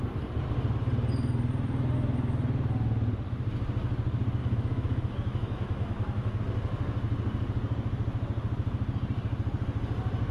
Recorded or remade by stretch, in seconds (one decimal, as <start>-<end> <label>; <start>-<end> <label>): 0.0-4.4 recorded; 4.4-6.4 remade; 6.4-10.3 recorded